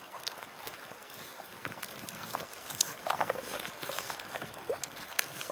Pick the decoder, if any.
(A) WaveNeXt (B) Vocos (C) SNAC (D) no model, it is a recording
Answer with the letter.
C